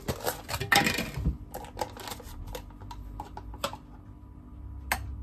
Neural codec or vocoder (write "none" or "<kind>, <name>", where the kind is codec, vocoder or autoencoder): none